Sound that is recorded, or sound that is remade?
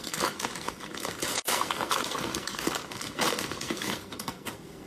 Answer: remade